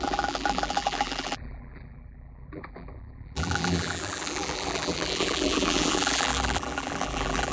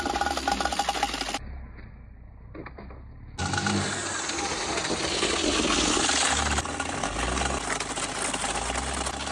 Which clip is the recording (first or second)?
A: second